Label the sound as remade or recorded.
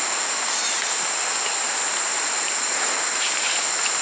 recorded